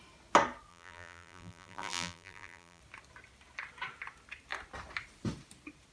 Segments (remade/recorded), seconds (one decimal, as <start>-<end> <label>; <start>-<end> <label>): 0.0-0.7 recorded; 0.7-2.8 remade; 2.8-5.9 recorded